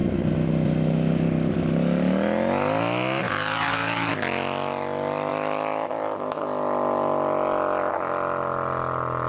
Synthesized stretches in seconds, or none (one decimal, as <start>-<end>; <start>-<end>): 3.2-4.1